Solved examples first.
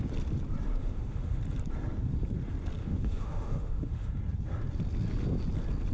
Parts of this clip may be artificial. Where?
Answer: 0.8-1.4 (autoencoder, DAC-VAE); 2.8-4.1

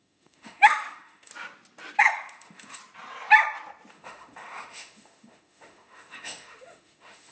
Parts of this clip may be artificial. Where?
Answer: 0.0-1.3 (autoencoder, DAC-VAE); 2.0-2.8; 3.9-7.3

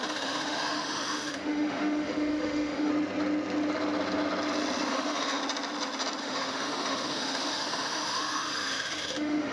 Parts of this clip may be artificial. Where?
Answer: 0.0-2.9 (autoencoder, DAC-VAE); 4.9-5.4; 6.2-9.5

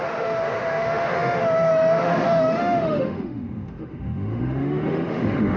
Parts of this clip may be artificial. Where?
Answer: 0.0-5.6 (autoencoder, DAC-VAE)

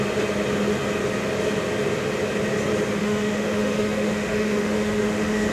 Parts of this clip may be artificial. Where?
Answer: 3.0-5.5 (autoencoder, DAC-VAE)